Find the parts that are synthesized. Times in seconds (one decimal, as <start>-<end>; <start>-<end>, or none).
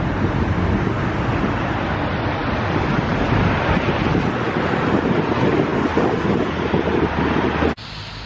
none